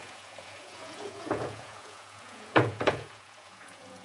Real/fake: fake